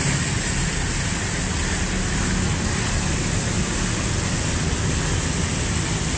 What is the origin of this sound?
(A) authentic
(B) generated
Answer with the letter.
A